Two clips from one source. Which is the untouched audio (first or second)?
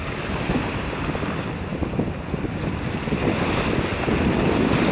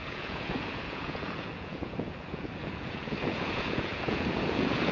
first